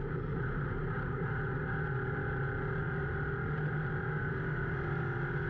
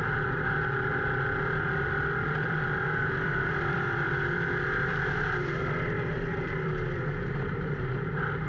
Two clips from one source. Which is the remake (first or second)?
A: second